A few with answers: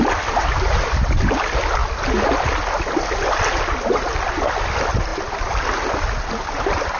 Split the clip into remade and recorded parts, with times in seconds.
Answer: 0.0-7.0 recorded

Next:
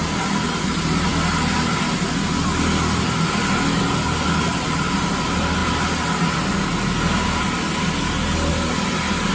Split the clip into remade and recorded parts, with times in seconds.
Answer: 0.0-9.3 recorded

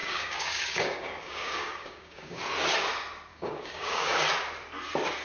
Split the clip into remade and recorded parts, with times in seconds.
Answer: 0.0-2.4 remade; 2.4-3.3 recorded; 3.3-4.1 remade; 4.1-5.2 recorded

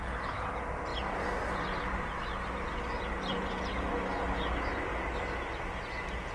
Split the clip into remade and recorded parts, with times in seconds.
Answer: 0.0-6.3 recorded

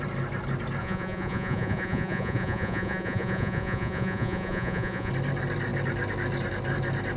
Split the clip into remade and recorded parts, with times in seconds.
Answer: 0.0-0.8 recorded; 0.8-5.1 remade; 5.1-7.2 recorded